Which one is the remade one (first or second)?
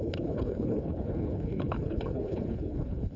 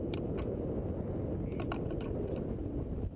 first